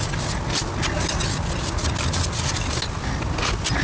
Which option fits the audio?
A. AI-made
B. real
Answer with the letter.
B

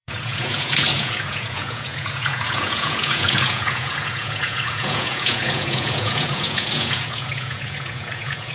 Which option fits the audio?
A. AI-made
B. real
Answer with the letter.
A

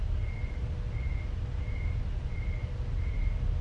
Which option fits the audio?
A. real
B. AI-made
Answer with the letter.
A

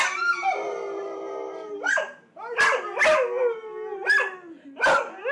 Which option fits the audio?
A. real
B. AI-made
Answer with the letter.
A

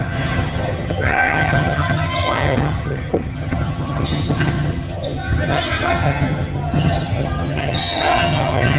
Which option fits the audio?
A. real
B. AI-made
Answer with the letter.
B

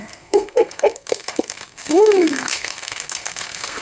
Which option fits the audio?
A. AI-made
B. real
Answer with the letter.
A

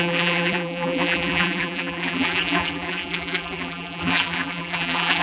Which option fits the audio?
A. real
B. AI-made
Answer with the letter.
B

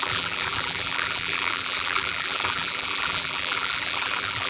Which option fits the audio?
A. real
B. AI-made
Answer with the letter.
B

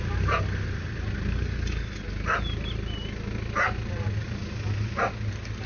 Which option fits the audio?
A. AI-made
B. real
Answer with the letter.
B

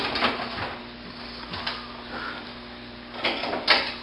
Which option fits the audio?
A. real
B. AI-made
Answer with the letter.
A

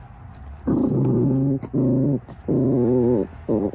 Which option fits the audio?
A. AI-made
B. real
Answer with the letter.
B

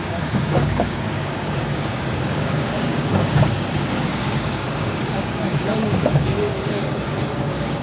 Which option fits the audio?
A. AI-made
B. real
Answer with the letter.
A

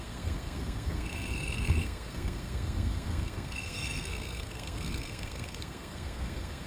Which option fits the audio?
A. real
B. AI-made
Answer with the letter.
B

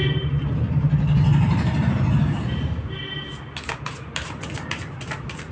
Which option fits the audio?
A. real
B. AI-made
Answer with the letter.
A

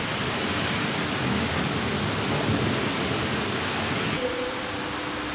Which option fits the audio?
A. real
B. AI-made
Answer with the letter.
A